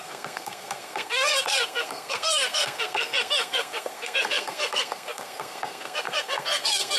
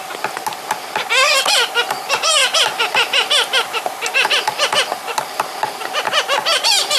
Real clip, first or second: second